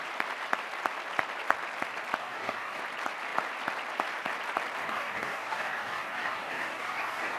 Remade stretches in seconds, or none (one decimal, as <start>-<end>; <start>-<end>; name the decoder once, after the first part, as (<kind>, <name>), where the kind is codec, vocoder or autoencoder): 2.2-2.8 (codec, DAC); 4.8-7.4